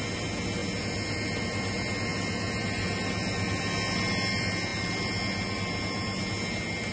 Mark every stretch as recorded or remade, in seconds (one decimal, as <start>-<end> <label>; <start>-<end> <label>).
0.0-6.9 recorded